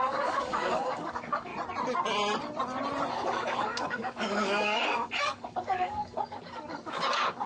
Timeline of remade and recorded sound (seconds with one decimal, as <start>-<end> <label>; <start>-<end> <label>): 0.0-1.5 remade; 1.5-3.1 recorded; 3.1-7.5 remade